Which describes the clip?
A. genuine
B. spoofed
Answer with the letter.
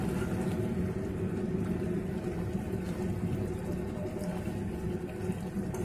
A